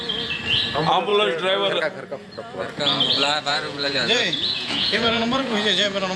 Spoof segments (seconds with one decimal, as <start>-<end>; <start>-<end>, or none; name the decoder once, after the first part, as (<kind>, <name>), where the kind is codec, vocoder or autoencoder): 3.5-6.2 (vocoder, Vocos)